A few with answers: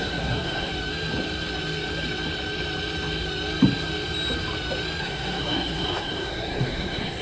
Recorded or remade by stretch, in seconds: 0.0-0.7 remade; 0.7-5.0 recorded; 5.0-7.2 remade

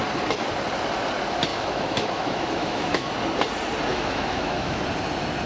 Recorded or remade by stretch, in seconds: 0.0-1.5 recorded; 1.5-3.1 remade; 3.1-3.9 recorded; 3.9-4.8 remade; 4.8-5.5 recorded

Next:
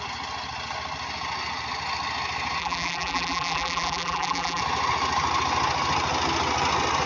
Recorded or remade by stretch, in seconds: 0.0-2.6 recorded; 2.6-4.6 remade; 4.6-7.1 recorded

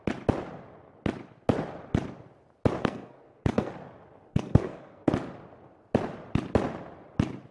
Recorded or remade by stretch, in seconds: 0.0-2.8 recorded; 2.8-3.7 remade; 3.7-4.3 recorded; 4.3-5.1 remade; 5.1-7.5 recorded

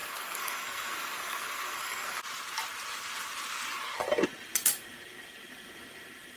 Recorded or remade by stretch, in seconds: 0.0-2.2 remade; 2.2-6.4 recorded